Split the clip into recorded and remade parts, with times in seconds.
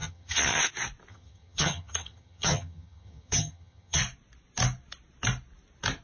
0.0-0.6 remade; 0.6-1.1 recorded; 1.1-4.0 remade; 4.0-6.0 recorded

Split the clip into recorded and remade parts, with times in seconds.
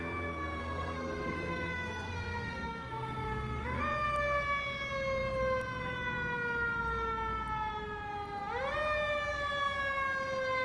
0.0-0.6 recorded; 0.6-3.8 remade; 3.8-10.6 recorded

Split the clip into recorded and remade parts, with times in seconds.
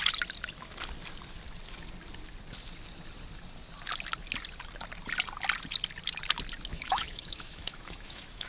0.0-6.7 recorded; 6.7-8.5 remade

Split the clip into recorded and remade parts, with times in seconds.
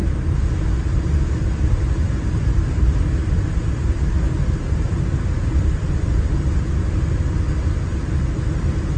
0.0-9.0 recorded